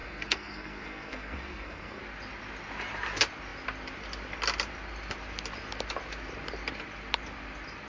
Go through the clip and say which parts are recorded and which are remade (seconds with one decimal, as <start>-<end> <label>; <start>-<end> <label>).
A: 0.0-2.0 remade; 2.0-7.9 recorded

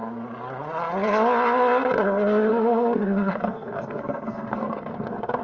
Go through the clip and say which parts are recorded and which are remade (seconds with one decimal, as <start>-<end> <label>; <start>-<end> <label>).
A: 0.0-2.5 recorded; 2.5-5.4 remade

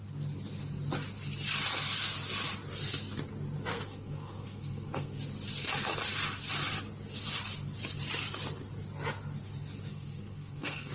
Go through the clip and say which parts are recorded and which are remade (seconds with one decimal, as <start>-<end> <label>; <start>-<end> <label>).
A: 0.0-3.7 recorded; 3.7-5.2 remade; 5.2-9.9 recorded; 9.9-10.9 remade

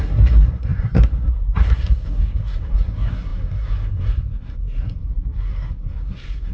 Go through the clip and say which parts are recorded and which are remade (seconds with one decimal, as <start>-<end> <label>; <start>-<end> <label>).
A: 0.0-6.5 remade